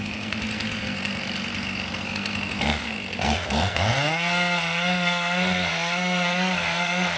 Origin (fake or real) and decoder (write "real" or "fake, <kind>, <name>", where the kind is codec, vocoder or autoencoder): fake, codec, SNAC